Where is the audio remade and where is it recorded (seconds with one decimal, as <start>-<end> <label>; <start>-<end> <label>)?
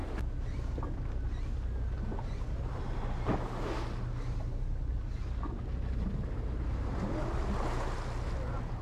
0.0-8.8 recorded